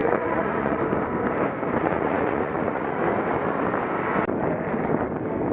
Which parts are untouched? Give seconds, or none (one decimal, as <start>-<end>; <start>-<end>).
0.8-1.8; 3.0-5.5